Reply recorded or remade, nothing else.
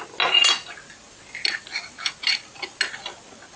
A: recorded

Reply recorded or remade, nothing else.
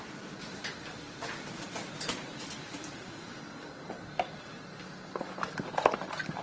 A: recorded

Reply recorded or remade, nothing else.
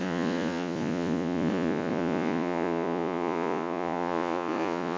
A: remade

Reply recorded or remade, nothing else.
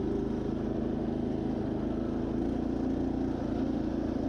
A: recorded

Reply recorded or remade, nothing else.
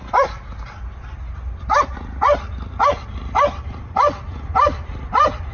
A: recorded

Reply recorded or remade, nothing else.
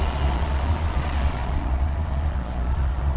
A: remade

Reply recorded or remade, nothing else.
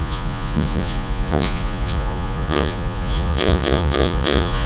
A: remade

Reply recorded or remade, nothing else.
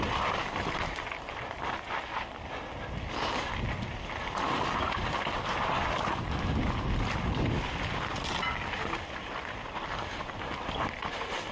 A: recorded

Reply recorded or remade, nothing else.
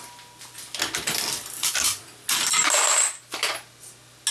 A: recorded